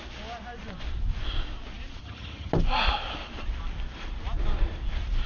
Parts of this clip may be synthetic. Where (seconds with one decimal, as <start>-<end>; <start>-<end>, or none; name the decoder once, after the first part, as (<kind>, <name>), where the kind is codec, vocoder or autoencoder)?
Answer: 2.0-2.5 (vocoder, HiFi-GAN)